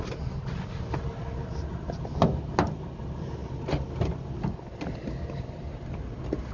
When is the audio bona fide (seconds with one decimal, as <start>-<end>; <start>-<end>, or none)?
0.0-6.5